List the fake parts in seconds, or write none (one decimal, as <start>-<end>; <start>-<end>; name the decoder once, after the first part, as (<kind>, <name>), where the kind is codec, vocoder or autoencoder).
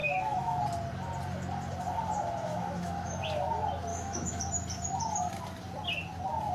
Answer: 0.0-0.6 (autoencoder, DAC-VAE); 2.5-3.2; 3.9-4.4